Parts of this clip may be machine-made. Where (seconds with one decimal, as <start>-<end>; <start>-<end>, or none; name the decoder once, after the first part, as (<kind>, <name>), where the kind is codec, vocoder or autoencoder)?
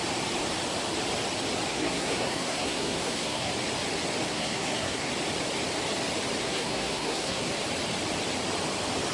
1.7-3.5 (codec, SNAC); 4.3-5.1; 6.4-7.5